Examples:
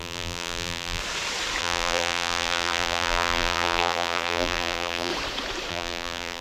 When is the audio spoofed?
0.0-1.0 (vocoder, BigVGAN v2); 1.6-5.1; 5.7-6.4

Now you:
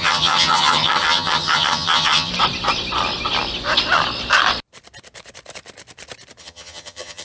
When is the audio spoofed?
0.0-2.3 (vocoder, HiFi-GAN); 6.4-7.2

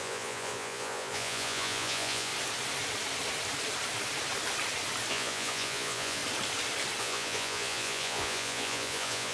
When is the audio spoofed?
0.0-2.3 (vocoder, Vocos); 5.1-6.2; 7.0-9.3

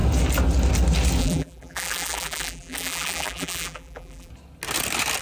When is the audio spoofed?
1.2-4.3 (vocoder, BigVGAN v2)

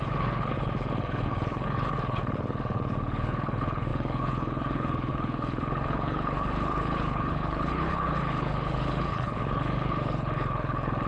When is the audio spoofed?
0.0-11.1 (codec, HILCodec)

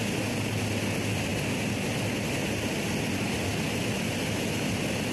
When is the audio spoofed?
none

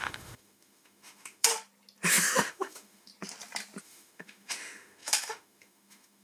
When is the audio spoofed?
0.0-1.5 (autoencoder, DAC-VAE); 2.1-3.1; 3.8-6.2